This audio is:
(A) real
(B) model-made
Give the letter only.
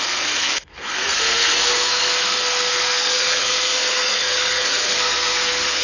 B